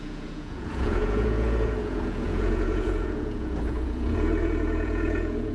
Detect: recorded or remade remade